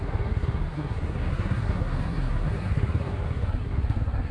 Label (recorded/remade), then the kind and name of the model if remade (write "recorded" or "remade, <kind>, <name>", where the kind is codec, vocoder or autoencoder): remade, codec, SNAC